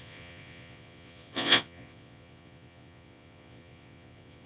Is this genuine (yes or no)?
no